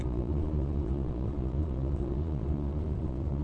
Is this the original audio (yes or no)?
no